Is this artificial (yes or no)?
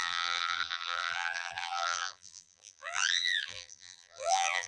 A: yes